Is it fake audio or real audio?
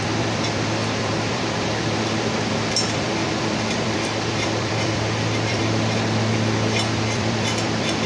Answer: fake